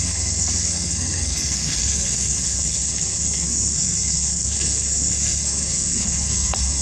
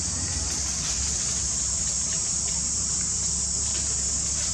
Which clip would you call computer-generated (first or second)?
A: first